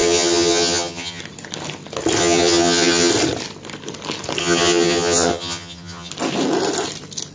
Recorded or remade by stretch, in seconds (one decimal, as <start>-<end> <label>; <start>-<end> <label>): 0.0-1.2 remade; 1.2-2.2 recorded; 2.2-3.1 remade; 3.1-4.4 recorded; 4.4-6.1 remade; 6.1-7.3 recorded

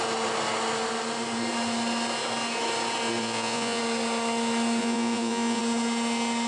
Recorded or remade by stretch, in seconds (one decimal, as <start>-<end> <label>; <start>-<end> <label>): 0.0-3.2 recorded; 3.2-3.8 remade; 3.8-4.8 recorded; 4.8-5.6 remade; 5.6-6.5 recorded

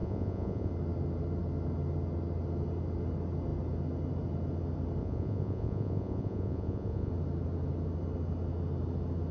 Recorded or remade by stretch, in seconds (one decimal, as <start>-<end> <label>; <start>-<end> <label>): 0.0-0.7 remade; 0.7-5.0 recorded; 5.0-7.1 remade; 7.1-9.3 recorded

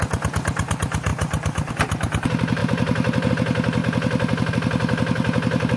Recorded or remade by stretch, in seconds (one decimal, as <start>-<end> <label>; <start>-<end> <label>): 0.0-1.1 recorded; 1.1-1.7 remade; 1.7-2.6 recorded; 2.6-3.3 remade; 3.3-5.8 recorded

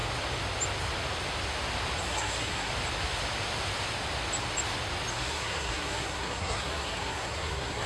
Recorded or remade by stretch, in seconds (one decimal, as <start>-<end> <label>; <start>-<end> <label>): 0.0-2.0 recorded; 2.0-2.7 remade; 2.7-5.1 recorded; 5.1-7.9 remade